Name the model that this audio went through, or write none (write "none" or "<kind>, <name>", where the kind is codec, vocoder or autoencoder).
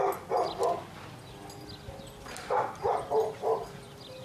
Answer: none